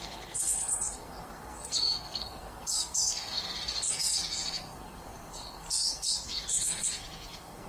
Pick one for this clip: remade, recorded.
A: remade